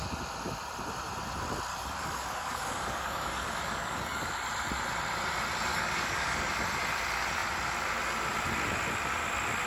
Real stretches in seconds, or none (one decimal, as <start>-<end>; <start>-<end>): 0.0-1.7; 4.3-5.7; 6.5-9.7